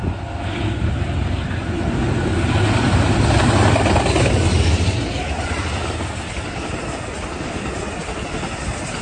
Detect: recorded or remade recorded